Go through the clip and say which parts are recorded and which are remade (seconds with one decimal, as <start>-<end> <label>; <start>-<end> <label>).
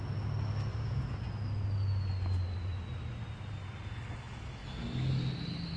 0.0-0.7 recorded; 0.7-1.4 remade; 1.4-5.8 recorded